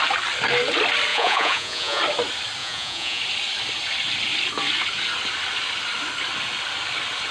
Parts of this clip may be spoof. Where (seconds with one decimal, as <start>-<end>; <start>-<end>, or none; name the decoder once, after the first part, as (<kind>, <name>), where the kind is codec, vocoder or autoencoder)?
1.1-2.0 (vocoder, Vocos); 2.6-3.2